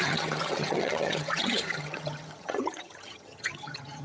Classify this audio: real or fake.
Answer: fake